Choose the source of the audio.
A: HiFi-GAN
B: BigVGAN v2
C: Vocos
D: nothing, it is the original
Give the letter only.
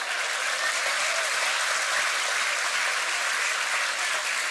D